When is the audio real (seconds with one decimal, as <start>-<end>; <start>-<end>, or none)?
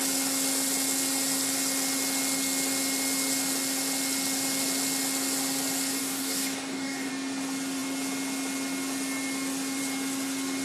0.0-6.0; 7.1-10.6